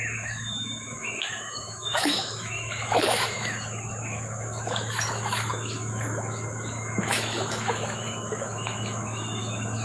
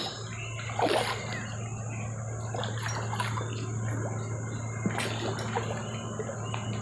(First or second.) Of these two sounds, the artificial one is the first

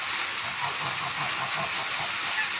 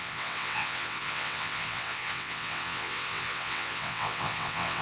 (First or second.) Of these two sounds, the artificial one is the second